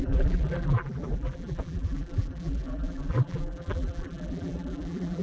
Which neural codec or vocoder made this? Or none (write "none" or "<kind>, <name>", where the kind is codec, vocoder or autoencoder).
vocoder, BigVGAN v2